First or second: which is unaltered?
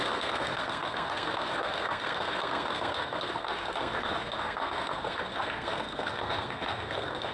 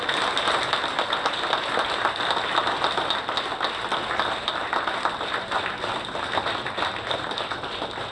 second